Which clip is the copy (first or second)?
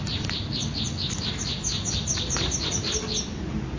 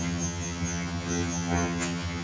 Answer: second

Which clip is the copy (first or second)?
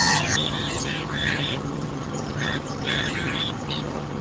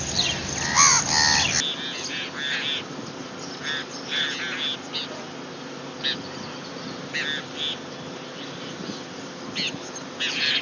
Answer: first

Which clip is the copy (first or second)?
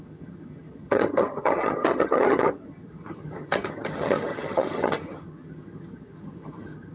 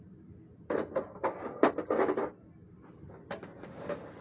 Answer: first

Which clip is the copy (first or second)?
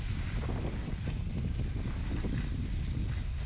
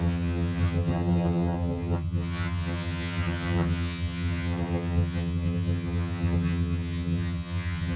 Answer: second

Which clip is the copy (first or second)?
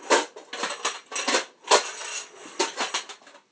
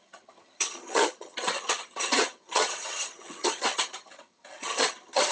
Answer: second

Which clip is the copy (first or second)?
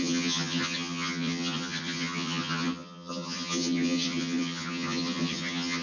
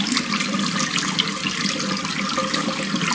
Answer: first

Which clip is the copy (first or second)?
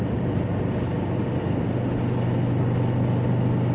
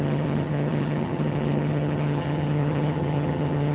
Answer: second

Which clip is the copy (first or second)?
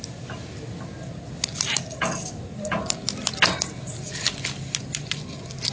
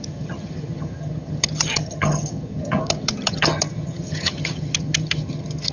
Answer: second